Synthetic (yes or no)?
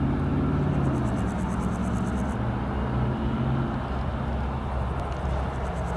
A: no